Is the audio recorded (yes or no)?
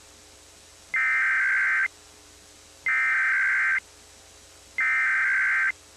yes